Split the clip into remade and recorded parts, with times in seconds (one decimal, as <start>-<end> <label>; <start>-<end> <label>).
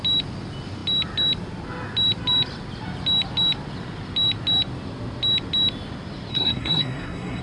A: 0.0-6.3 recorded; 6.3-7.4 remade